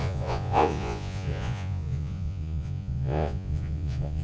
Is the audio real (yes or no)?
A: no